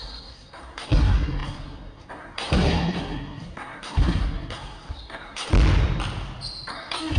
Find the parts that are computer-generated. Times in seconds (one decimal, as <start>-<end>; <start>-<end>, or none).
0.0-5.5; 6.7-7.2